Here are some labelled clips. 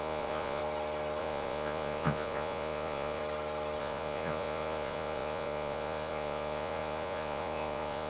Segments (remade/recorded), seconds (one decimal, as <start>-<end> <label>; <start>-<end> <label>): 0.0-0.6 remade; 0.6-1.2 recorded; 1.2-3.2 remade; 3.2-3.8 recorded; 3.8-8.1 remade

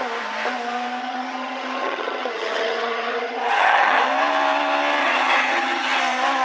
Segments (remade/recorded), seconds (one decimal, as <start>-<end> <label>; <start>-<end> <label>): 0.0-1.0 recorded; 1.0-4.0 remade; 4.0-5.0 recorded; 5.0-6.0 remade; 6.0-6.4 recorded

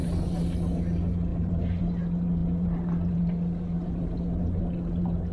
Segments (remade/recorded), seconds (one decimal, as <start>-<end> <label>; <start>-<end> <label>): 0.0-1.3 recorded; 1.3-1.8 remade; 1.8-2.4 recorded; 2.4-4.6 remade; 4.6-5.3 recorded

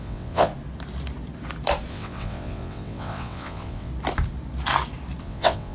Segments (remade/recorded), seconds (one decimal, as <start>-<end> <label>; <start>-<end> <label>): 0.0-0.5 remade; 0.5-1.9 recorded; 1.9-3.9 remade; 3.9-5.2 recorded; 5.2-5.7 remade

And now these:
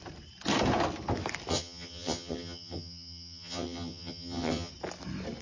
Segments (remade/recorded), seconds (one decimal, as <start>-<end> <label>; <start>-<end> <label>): 0.0-1.5 recorded; 1.5-4.7 remade; 4.7-5.4 recorded